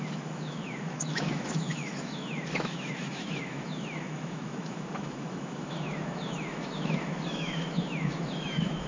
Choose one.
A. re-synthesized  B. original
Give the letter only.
A